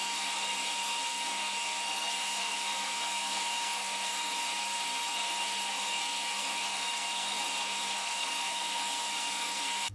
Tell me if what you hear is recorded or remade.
remade